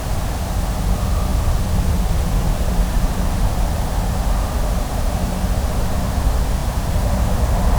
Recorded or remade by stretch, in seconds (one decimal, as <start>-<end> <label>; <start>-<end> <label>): 0.0-7.8 recorded